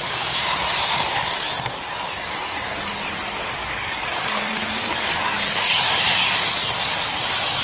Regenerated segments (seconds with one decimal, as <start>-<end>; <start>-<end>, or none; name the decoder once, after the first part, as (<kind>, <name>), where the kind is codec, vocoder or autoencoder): 3.6-5.7 (codec, DAC)